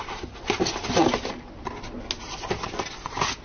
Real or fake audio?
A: real